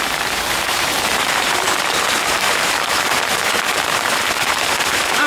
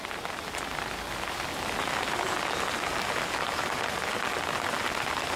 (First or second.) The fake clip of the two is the first